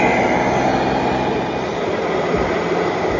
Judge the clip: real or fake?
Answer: fake